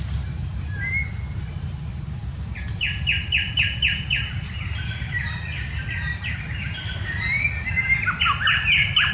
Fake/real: real